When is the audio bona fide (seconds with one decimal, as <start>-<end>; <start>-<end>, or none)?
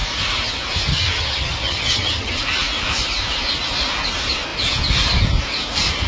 0.0-0.9; 2.4-6.1